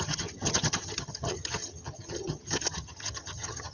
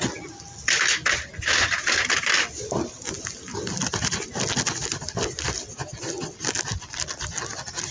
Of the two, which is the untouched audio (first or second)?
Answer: second